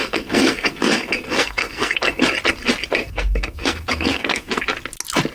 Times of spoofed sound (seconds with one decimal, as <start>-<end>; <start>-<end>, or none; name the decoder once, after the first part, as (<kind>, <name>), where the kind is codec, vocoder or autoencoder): 0.0-2.2 (codec, SNAC); 3.0-4.6